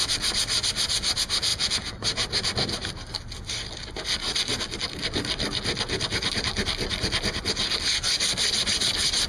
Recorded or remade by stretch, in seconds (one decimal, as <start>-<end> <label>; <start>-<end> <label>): 0.0-9.3 recorded